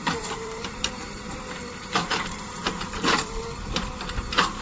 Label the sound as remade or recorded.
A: remade